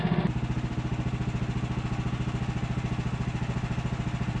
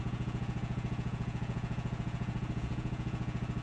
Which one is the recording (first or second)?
first